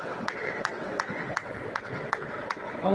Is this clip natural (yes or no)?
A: no